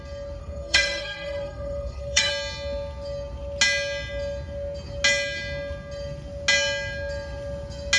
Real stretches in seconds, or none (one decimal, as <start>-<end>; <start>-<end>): 0.0-0.4; 2.3-8.0